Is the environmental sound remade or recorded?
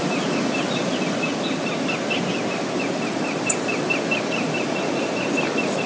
recorded